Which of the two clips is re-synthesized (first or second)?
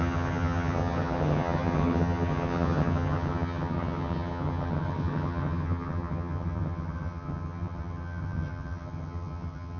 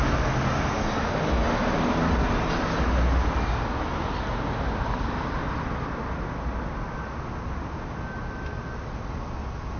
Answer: first